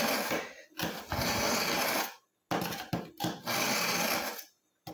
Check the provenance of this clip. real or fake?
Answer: real